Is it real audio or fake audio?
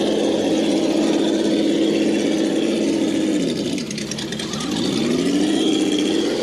real